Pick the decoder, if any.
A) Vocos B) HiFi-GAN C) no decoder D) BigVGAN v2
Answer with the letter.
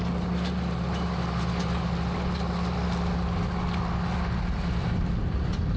C